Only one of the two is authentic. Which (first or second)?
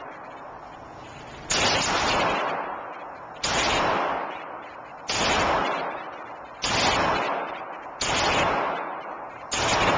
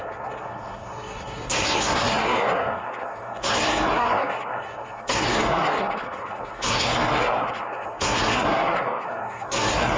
first